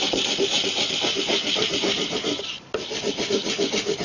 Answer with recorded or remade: recorded